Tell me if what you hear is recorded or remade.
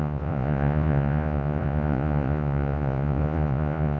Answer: remade